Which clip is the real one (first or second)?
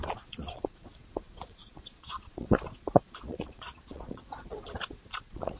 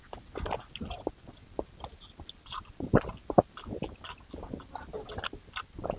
second